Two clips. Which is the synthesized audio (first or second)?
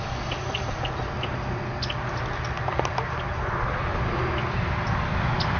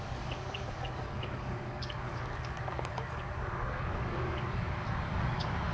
second